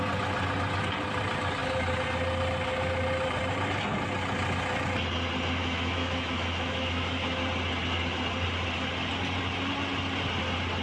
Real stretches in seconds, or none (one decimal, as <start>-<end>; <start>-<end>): 0.0-5.6; 7.4-10.8